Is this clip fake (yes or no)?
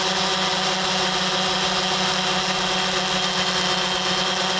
no